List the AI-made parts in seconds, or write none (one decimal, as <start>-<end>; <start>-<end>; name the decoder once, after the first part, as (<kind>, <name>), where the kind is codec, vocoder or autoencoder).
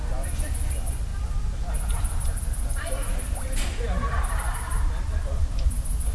none